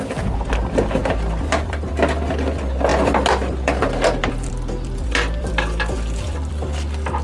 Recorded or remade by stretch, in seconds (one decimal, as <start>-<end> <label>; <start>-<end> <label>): 0.0-1.0 recorded; 1.0-1.9 remade; 1.9-2.9 recorded; 2.9-6.5 remade; 6.5-7.2 recorded